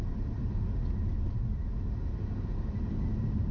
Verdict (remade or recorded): recorded